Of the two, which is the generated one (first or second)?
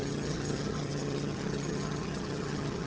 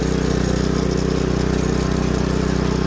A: first